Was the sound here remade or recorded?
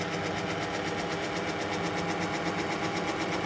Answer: recorded